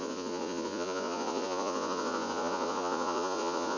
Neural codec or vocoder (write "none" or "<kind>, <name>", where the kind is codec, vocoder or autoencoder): vocoder, Vocos